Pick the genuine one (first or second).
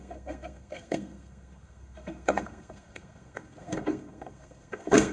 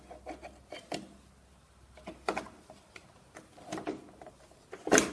second